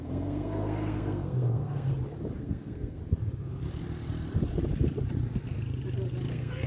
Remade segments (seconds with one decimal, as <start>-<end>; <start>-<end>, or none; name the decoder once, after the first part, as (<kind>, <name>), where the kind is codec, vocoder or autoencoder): 0.0-1.9 (codec, SNAC); 2.4-3.0; 6.3-6.7